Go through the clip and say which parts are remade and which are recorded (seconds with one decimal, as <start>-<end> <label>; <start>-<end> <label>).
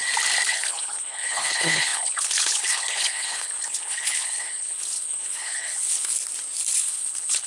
0.0-0.5 recorded; 0.5-6.1 remade; 6.1-6.8 recorded; 6.8-7.5 remade